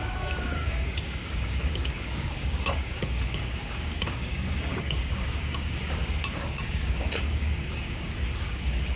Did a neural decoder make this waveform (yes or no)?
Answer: yes